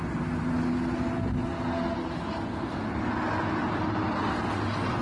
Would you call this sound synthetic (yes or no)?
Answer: no